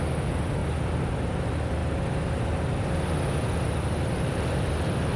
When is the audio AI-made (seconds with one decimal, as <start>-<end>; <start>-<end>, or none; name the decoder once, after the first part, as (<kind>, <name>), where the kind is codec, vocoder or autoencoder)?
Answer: none